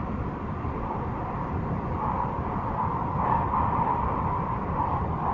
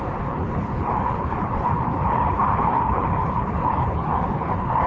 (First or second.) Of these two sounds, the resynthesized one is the second